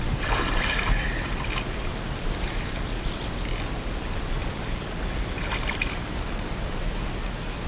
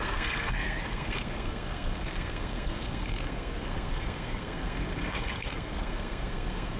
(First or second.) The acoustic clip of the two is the first